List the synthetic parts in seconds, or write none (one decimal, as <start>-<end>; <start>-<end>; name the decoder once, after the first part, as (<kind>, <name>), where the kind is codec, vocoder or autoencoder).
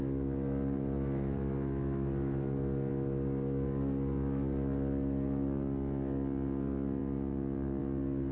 none